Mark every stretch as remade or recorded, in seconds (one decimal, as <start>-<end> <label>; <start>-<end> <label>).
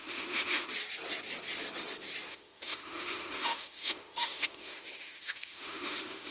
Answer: 0.0-0.7 remade; 0.7-2.3 recorded; 2.3-6.3 remade